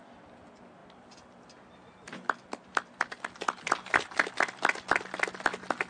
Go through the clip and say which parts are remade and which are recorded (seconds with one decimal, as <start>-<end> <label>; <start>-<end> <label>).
0.0-5.9 recorded